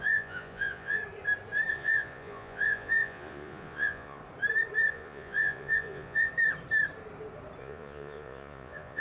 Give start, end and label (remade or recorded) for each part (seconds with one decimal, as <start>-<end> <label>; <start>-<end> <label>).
0.0-1.0 remade; 1.0-1.7 recorded; 1.7-4.2 remade; 4.2-4.9 recorded; 4.9-6.3 remade; 6.3-7.6 recorded; 7.6-9.0 remade